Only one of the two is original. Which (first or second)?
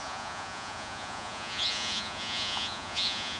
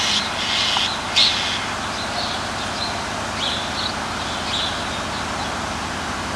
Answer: second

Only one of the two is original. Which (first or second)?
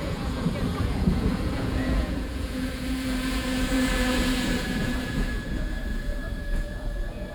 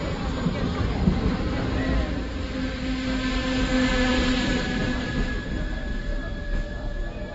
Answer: second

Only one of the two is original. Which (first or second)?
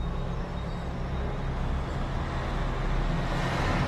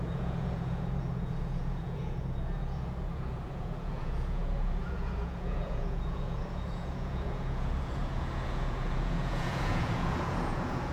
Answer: first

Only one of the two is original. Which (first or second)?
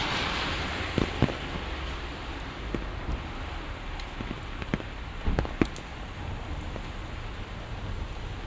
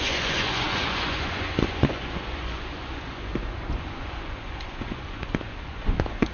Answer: first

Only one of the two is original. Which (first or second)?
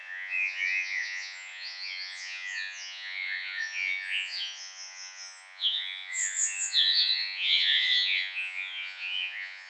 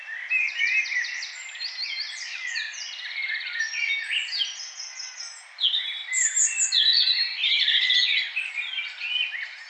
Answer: second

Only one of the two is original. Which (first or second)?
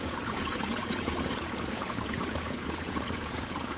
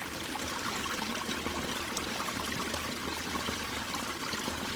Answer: second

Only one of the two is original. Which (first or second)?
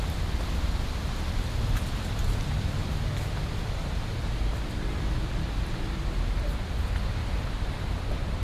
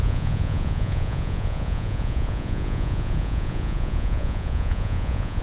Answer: first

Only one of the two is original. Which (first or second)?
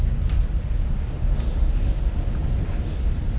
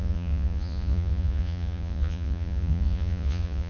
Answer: first